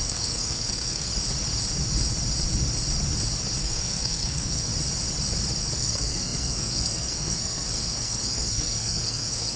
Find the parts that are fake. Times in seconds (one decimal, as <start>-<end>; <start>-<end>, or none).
0.0-1.1; 3.6-4.7; 5.6-9.6